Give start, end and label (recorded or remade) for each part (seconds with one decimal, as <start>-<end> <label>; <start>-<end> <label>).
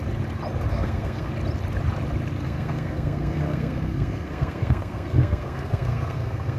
0.0-0.7 recorded; 0.7-1.3 remade; 1.3-2.4 recorded; 2.4-6.6 remade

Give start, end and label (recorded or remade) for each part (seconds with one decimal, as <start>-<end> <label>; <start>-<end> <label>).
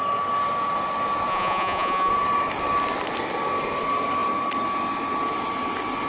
0.0-1.3 recorded; 1.3-2.1 remade; 2.1-6.1 recorded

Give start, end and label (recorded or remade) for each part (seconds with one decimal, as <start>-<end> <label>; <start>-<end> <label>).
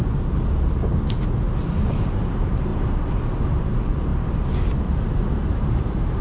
0.0-2.3 recorded; 2.3-2.7 remade; 2.7-3.6 recorded; 3.6-6.2 remade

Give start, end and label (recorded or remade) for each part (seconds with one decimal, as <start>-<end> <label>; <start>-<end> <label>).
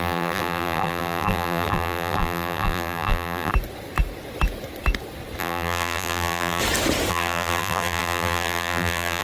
0.0-3.5 remade; 3.5-5.4 recorded; 5.4-6.6 remade; 6.6-7.1 recorded; 7.1-9.2 remade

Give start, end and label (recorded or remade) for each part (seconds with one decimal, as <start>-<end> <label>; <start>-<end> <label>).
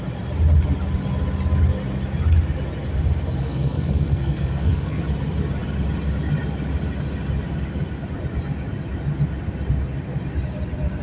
0.0-3.4 recorded; 3.4-5.0 remade; 5.0-11.0 recorded